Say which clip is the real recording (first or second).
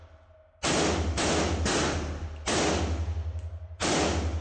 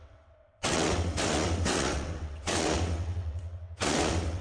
first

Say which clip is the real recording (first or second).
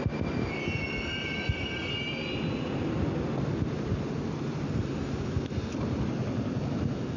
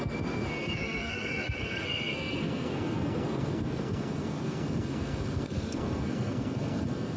first